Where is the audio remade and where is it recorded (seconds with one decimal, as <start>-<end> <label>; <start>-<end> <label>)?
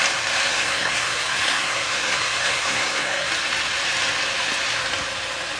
0.0-0.5 recorded; 0.5-3.3 remade; 3.3-5.6 recorded